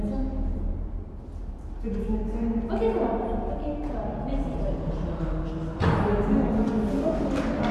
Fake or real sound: real